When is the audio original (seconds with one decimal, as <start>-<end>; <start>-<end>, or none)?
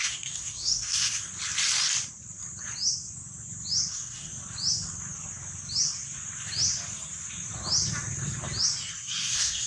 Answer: 1.3-3.9; 4.3-8.9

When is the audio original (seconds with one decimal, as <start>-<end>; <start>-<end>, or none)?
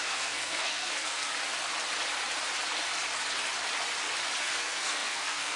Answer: 1.3-4.4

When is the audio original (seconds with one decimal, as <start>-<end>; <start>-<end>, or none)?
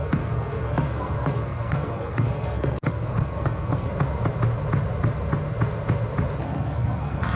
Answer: 3.9-6.4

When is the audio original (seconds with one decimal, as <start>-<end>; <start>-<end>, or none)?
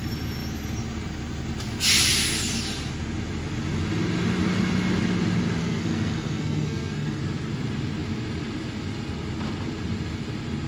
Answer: 0.0-5.6; 7.2-10.7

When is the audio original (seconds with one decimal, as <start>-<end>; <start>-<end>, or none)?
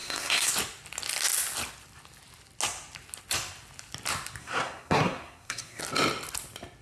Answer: 0.5-4.4; 5.8-6.8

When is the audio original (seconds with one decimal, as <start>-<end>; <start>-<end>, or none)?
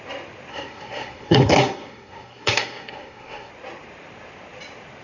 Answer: 0.0-0.5; 3.5-5.0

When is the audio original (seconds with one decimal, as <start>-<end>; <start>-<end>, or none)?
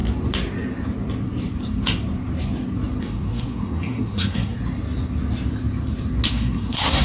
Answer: 0.0-3.0; 4.6-6.3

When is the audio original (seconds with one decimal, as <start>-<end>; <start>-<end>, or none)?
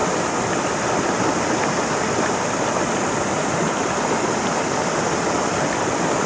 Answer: 0.0-6.3